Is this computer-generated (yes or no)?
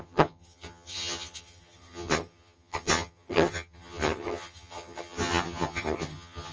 yes